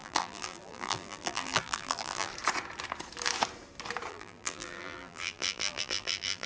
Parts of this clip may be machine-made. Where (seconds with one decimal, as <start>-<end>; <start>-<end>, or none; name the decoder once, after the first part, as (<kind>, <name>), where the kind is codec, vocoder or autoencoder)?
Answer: 0.0-2.3 (vocoder, BigVGAN v2); 4.1-6.5